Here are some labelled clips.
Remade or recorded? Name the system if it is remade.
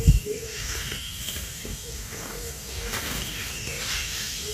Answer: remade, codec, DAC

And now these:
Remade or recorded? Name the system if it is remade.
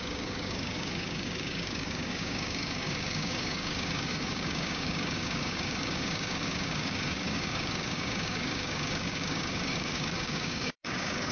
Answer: remade, codec, DAC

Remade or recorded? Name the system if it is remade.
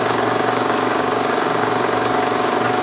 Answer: remade, codec, DAC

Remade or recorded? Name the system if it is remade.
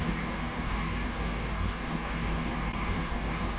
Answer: remade, codec, DAC